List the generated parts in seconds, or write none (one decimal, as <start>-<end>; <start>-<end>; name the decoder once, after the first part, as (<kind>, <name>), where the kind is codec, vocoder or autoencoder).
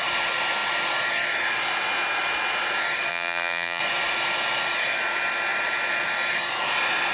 3.1-3.8 (vocoder, BigVGAN v2)